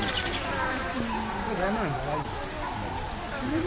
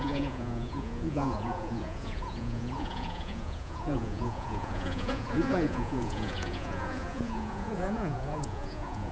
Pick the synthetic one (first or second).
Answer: second